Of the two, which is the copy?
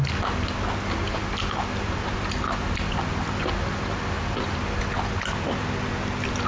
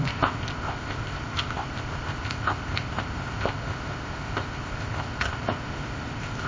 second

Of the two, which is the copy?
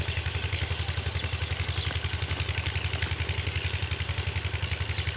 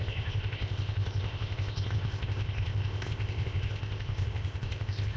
second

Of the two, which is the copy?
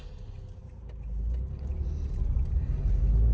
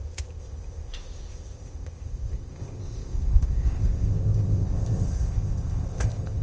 second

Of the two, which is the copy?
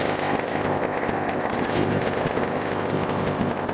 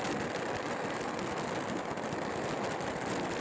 first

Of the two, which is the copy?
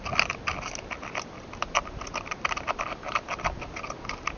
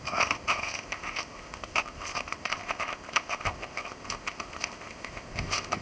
second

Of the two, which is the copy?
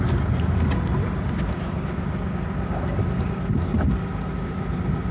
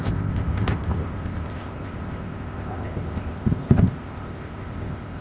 second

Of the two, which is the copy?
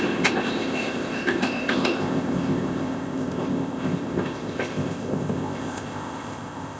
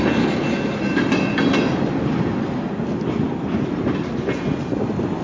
first